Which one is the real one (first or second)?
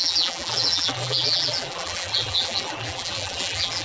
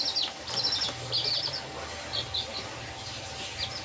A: second